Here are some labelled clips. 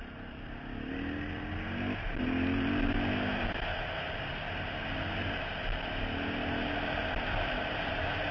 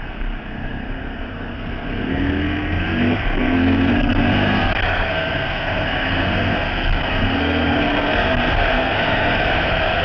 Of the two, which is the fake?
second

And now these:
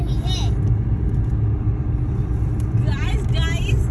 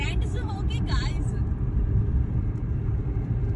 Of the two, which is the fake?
second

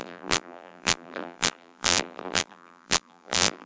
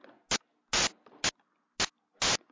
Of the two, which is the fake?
first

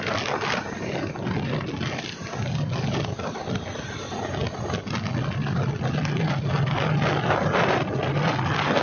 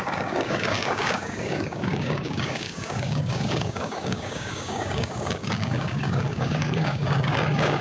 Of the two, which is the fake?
second